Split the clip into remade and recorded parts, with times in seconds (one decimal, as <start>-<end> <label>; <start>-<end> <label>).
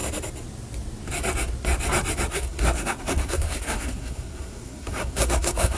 0.0-2.3 recorded; 2.3-5.8 remade